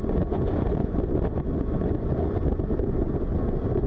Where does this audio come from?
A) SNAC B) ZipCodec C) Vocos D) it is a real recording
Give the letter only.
C